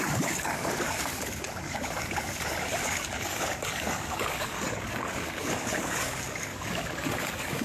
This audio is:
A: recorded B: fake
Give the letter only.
B